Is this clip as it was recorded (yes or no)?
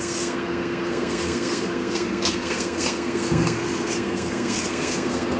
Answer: no